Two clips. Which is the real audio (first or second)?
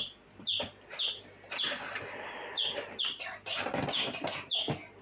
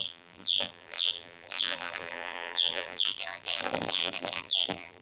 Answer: first